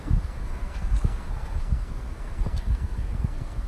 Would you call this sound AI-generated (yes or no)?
yes